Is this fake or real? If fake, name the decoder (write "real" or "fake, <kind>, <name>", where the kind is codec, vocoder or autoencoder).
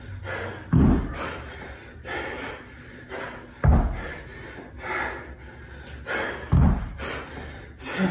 real